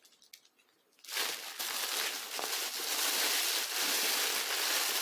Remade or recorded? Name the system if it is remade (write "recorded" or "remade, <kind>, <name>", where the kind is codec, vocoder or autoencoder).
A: recorded